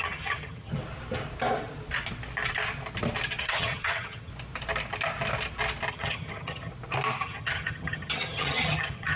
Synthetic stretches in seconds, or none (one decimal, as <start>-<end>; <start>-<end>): 0.0-0.7; 3.4-4.3; 5.9-6.7; 7.2-9.2